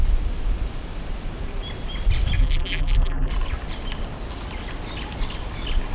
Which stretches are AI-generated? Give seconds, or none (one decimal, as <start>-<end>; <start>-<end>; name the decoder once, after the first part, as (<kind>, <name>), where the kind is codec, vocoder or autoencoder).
2.4-3.3 (vocoder, BigVGAN v2)

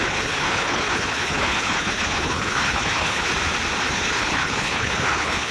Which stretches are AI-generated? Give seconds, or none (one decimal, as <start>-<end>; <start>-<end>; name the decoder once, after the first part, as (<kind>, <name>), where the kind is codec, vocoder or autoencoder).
0.0-3.3 (codec, HILCodec); 3.8-5.5

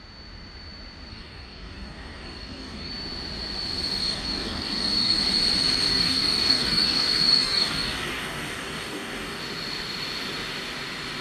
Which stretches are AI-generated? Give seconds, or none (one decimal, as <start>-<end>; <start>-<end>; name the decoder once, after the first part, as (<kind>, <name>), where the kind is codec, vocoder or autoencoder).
1.1-2.9 (codec, DAC); 4.0-5.2; 5.9-9.4

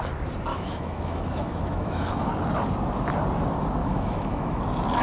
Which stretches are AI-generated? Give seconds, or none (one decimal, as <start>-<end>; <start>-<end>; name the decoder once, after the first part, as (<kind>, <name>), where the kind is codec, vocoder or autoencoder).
0.5-2.3 (autoencoder, DAC-VAE); 3.8-4.6